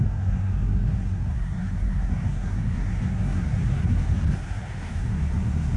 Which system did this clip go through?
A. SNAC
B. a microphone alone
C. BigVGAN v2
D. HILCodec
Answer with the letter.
A